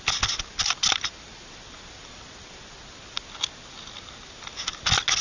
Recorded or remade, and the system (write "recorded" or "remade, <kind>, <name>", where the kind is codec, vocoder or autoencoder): recorded